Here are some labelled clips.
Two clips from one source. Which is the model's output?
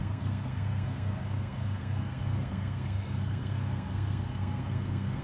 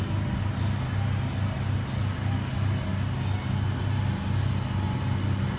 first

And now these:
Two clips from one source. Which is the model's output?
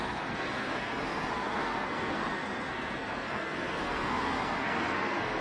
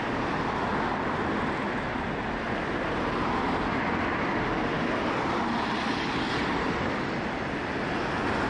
first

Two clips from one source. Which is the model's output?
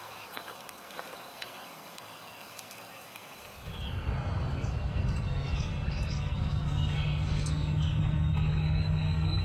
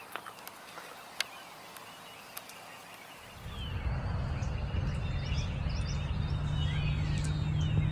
first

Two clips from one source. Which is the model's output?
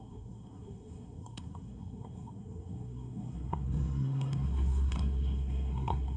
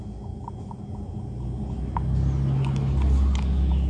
first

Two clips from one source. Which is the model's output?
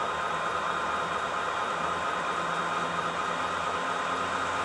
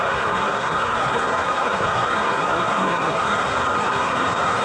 second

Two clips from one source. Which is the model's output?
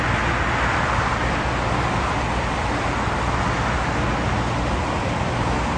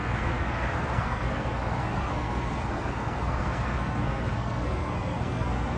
second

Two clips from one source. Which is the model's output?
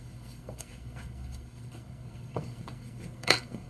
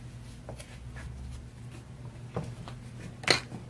first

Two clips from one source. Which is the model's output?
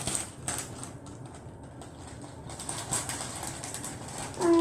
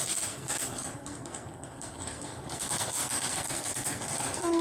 second